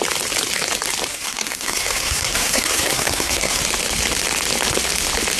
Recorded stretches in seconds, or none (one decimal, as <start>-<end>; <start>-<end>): 0.0-1.1; 3.6-5.4